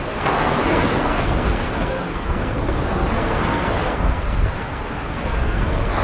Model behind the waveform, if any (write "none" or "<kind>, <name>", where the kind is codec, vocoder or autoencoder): codec, SNAC